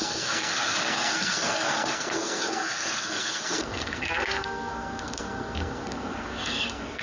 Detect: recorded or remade remade